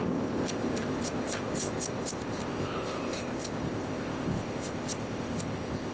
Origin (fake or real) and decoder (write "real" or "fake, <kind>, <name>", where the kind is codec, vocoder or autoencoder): fake, codec, ZipCodec